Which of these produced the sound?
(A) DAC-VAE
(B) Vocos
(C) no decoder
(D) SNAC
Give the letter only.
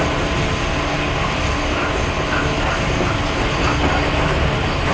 C